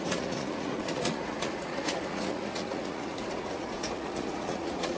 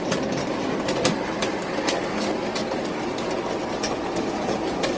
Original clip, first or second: second